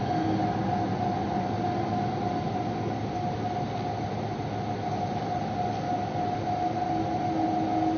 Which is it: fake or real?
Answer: real